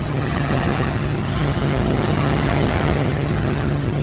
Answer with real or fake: fake